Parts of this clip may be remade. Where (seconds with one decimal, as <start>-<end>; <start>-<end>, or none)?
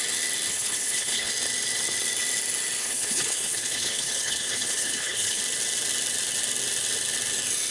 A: 0.5-1.3; 2.8-5.4